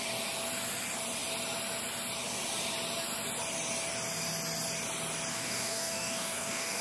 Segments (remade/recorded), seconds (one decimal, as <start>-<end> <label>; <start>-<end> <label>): 0.0-5.3 recorded; 5.3-6.8 remade